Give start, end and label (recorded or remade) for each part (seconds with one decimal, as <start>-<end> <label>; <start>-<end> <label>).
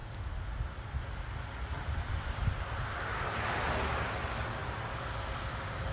0.0-5.9 recorded